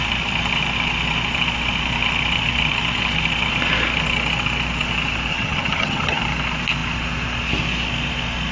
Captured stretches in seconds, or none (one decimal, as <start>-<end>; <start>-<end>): 0.0-5.3; 6.2-8.5